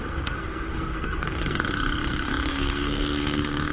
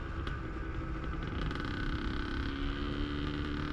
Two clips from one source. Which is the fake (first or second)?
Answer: first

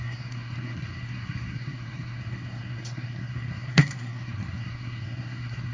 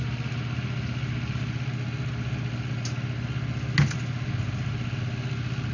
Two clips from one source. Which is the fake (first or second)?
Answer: first